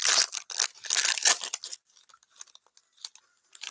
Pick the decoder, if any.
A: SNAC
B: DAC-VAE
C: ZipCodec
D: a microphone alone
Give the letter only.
D